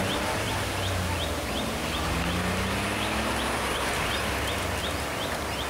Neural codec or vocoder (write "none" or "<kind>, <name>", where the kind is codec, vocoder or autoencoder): none